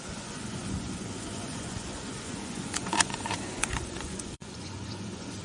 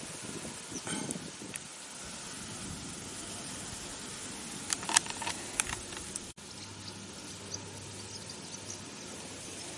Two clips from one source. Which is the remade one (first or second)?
first